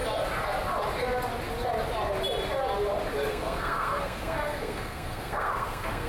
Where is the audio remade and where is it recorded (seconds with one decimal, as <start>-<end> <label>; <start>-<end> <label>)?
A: 0.0-3.3 recorded; 3.3-6.1 remade